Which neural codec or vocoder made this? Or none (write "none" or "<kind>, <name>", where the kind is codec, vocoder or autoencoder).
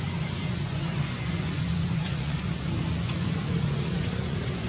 vocoder, Vocos